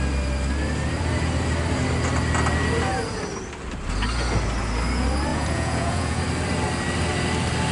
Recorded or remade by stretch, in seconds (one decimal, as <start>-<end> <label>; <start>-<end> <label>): 0.0-5.3 recorded; 5.3-6.2 remade; 6.2-7.7 recorded